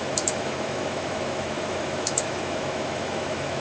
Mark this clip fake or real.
fake